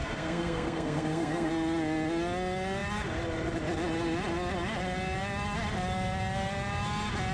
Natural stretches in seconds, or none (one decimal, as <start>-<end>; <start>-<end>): 1.5-7.3